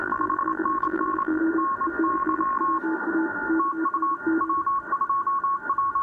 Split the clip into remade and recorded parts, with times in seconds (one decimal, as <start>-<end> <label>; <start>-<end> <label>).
0.0-1.4 remade; 1.4-2.1 recorded; 2.1-2.6 remade; 2.6-6.0 recorded